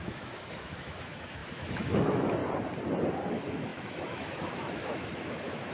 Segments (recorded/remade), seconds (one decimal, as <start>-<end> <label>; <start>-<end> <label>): 0.0-2.4 remade; 2.4-3.3 recorded; 3.3-5.7 remade